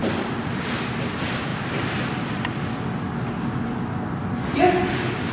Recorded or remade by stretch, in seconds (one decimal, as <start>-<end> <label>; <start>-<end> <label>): 0.0-5.3 recorded